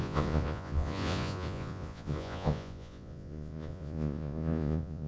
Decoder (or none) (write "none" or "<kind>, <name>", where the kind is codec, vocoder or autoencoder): vocoder, Vocos